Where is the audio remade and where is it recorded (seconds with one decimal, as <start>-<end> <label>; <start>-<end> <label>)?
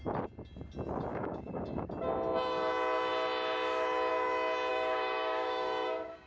0.0-1.1 recorded; 1.1-1.9 remade; 1.9-4.7 recorded; 4.7-6.3 remade